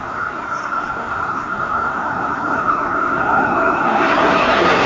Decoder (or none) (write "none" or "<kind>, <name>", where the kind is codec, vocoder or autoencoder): codec, SNAC